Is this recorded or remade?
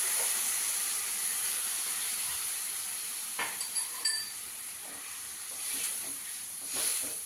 remade